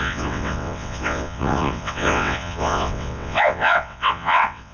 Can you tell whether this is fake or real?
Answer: fake